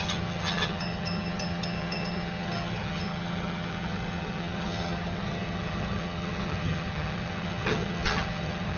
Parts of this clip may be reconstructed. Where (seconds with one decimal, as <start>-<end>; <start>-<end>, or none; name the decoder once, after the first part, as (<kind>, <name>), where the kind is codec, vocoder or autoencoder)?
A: 0.0-8.8 (vocoder, HiFi-GAN)